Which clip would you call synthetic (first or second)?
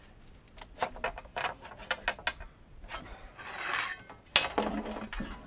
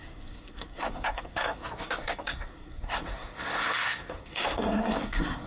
second